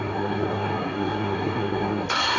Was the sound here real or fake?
fake